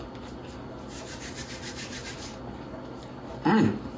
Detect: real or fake real